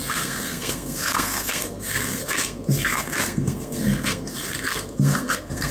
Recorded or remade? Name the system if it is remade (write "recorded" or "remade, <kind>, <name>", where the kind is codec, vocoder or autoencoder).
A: remade, codec, SNAC